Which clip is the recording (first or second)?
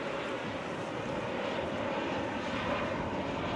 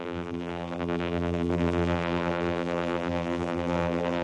first